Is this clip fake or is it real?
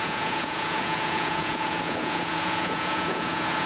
fake